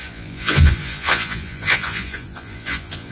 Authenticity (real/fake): fake